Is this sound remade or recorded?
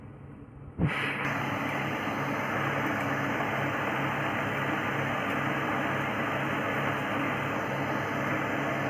recorded